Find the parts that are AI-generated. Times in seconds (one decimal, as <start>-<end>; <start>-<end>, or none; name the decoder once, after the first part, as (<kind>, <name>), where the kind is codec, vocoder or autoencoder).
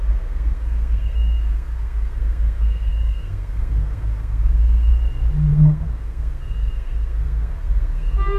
0.0-4.9 (codec, SNAC); 5.5-8.4